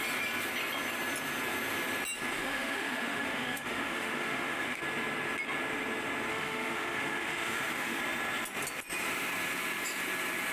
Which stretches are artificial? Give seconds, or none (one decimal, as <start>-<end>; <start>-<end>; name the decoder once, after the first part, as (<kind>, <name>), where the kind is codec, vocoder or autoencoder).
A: 2.3-4.8 (autoencoder, DAC-VAE); 6.3-8.0